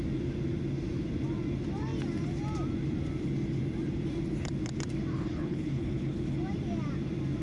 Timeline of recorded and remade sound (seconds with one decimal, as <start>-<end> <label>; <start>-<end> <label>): 0.0-5.1 recorded; 5.1-6.4 remade; 6.4-7.4 recorded